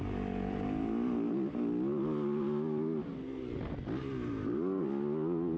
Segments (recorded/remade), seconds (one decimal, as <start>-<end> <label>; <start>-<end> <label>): 0.0-5.6 recorded